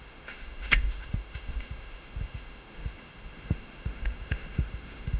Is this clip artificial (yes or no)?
yes